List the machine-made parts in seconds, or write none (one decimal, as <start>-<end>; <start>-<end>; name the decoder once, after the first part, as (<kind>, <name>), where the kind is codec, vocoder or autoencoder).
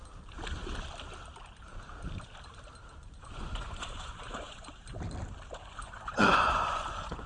3.0-4.8 (vocoder, Vocos); 5.6-7.3